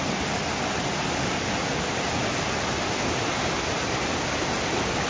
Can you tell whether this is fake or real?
real